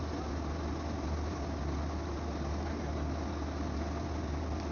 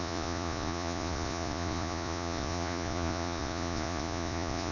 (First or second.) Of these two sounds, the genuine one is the first